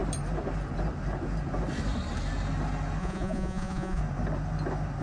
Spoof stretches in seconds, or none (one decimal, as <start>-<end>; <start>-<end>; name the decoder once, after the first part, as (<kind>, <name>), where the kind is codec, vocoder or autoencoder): 3.0-4.0 (vocoder, Vocos)